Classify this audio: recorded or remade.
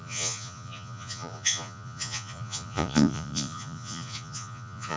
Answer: remade